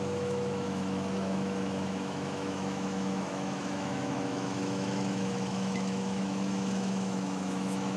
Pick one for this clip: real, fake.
fake